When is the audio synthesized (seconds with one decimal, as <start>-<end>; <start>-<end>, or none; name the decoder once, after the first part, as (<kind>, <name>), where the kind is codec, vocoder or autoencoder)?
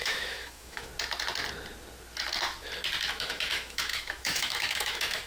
0.0-0.9 (autoencoder, DAC-VAE); 3.1-5.3